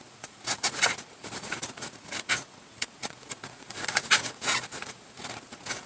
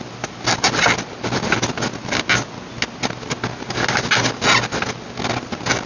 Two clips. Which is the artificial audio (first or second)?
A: first